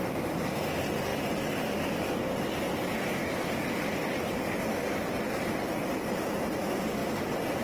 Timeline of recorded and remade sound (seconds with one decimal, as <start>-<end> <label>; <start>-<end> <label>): 0.0-7.6 recorded